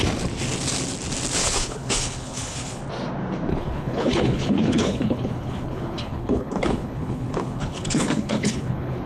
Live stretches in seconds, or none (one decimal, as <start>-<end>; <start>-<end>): 0.0-1.4; 2.8-3.5